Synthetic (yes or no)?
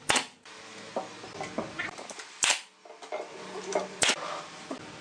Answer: no